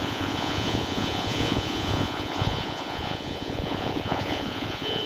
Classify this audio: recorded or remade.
remade